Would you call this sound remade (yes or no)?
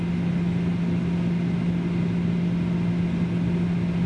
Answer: no